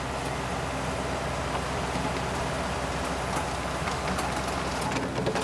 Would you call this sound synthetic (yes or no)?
no